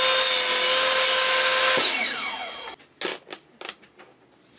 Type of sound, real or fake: real